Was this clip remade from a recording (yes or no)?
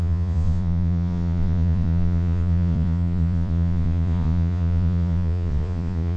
yes